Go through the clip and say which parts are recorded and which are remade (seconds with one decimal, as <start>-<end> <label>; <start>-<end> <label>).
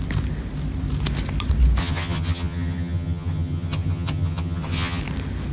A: 0.0-1.8 recorded; 1.8-5.0 remade; 5.0-5.5 recorded